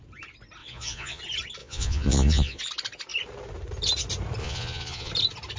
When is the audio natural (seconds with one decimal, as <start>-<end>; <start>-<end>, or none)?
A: 0.0-0.6; 1.2-1.6; 2.6-4.4; 5.1-5.6